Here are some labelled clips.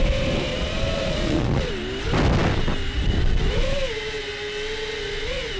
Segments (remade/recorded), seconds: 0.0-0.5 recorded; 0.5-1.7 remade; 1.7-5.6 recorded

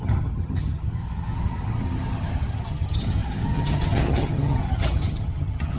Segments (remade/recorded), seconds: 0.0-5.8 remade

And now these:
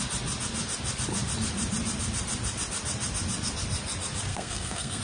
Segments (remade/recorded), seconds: 0.0-4.3 recorded; 4.3-5.0 remade

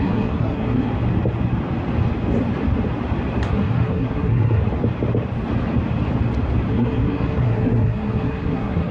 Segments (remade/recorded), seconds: 0.0-0.9 remade; 0.9-3.5 recorded; 3.5-4.6 remade; 4.6-6.7 recorded; 6.7-8.9 remade